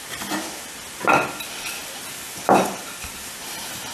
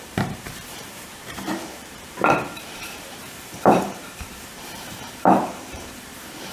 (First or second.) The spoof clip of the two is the second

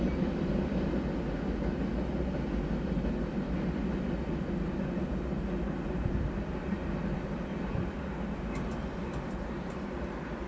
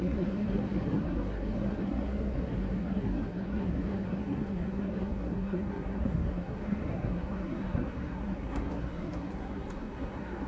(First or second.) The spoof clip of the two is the second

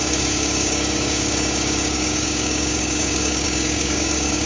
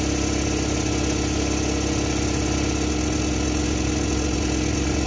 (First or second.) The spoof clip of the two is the first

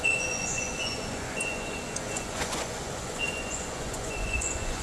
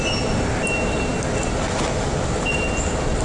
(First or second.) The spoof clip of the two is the first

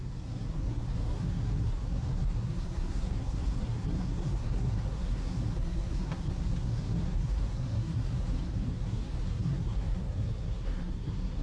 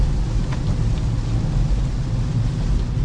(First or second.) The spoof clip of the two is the first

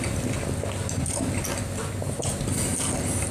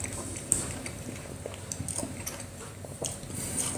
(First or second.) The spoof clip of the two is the second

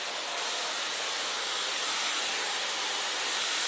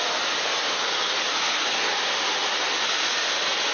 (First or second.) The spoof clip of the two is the first